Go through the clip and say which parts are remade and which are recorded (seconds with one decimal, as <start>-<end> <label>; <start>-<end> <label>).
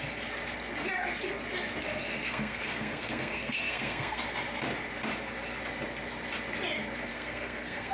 0.0-2.0 recorded; 2.0-4.2 remade; 4.2-7.1 recorded; 7.1-7.9 remade